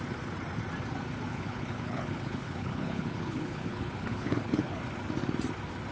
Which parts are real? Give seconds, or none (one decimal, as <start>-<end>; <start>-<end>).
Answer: 0.0-1.3; 4.8-5.9